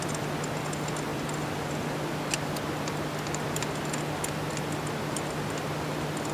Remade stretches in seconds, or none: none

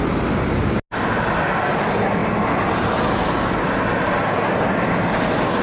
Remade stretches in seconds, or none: none

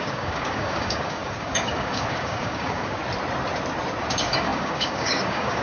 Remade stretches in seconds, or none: 0.0-3.0 (codec, DAC); 4.1-5.6

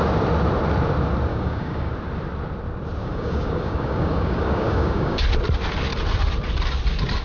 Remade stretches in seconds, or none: 1.3-1.9 (codec, DAC); 3.0-5.2

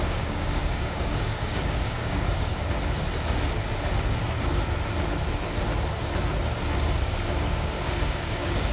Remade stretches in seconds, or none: 0.0-2.5 (codec, DAC); 7.0-8.7

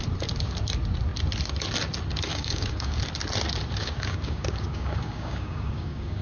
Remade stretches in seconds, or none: 2.3-3.0 (codec, DAC); 3.8-6.2

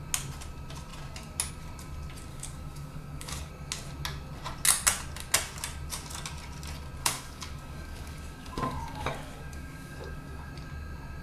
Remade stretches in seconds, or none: 2.3-3.5 (codec, DAC); 7.0-10.5

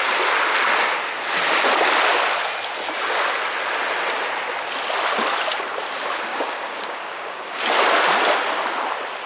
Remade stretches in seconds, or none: 6.3-7.6 (codec, DAC)